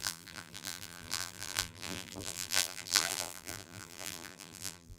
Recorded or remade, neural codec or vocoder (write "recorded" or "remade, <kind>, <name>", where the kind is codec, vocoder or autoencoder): remade, vocoder, BigVGAN v2